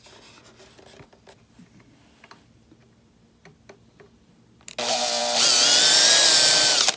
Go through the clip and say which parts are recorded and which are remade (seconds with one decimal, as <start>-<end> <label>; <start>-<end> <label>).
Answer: 0.0-7.0 recorded